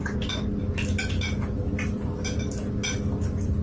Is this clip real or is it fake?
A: real